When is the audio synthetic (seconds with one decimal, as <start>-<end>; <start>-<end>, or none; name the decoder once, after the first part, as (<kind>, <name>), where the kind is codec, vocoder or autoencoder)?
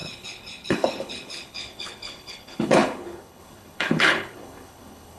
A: 0.0-5.2 (codec, HILCodec)